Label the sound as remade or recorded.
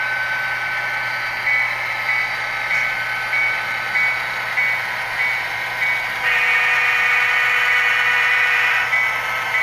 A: recorded